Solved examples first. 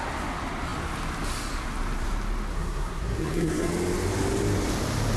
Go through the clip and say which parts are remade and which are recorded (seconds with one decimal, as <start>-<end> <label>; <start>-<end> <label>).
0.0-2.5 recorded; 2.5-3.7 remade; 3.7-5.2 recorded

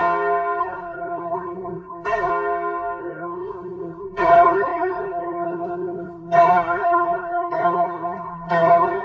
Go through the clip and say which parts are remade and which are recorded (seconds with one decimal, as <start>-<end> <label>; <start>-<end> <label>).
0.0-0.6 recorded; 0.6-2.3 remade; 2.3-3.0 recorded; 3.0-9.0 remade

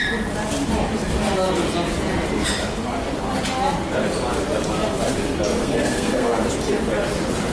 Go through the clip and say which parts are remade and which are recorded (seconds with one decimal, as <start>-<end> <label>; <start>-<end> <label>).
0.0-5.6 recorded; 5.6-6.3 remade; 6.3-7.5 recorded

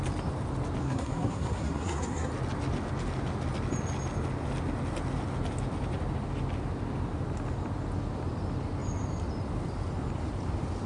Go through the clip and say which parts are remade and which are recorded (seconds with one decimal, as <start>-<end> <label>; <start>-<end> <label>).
0.0-0.8 recorded; 0.8-2.3 remade; 2.3-10.9 recorded

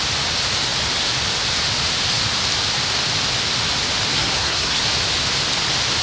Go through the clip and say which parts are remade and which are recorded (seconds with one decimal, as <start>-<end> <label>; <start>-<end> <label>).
0.0-4.1 recorded; 4.1-4.8 remade; 4.8-6.0 recorded

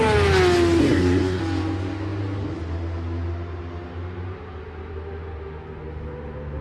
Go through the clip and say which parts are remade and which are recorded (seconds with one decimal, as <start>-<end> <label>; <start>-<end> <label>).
0.0-0.8 recorded; 0.8-1.4 remade; 1.4-6.6 recorded

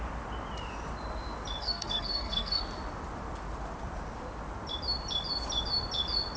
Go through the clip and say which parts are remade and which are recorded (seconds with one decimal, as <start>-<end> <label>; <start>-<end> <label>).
0.0-1.6 recorded; 1.6-2.6 remade; 2.6-6.4 recorded